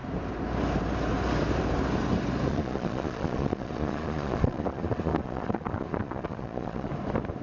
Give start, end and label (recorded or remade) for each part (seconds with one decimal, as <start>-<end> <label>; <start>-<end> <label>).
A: 0.0-2.5 recorded; 2.5-6.9 remade; 6.9-7.4 recorded